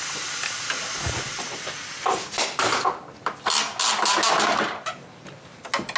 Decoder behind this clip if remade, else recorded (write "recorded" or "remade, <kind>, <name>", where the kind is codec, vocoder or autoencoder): recorded